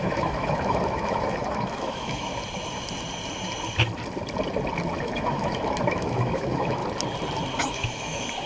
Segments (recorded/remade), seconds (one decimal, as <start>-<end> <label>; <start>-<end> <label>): 0.0-2.3 remade; 2.3-5.0 recorded; 5.0-6.8 remade; 6.8-7.6 recorded; 7.6-8.5 remade